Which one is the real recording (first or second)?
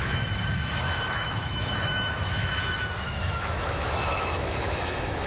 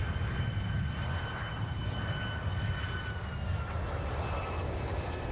second